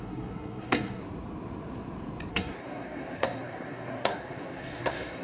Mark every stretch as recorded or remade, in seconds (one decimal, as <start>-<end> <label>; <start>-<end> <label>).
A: 0.0-1.0 remade; 1.0-2.3 recorded; 2.3-5.2 remade